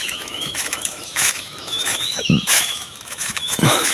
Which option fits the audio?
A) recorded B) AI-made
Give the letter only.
B